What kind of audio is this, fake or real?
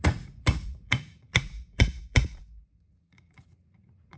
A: fake